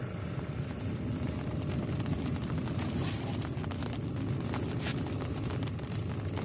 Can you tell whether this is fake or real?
real